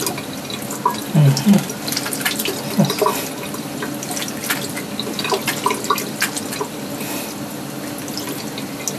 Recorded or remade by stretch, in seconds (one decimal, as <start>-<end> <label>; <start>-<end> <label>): 0.0-9.0 recorded